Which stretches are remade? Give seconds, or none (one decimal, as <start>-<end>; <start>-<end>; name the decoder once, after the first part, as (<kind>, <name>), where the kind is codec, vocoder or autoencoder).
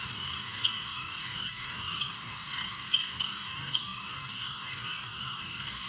0.0-5.9 (codec, DAC)